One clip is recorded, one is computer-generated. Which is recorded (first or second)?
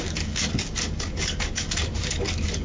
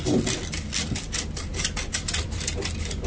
second